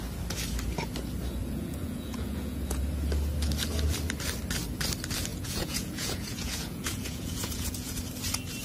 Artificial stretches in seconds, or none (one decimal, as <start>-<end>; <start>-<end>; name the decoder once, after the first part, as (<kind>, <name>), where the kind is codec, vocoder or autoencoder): 1.4-2.8 (vocoder, Vocos); 5.3-8.0